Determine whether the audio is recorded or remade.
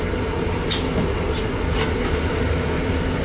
recorded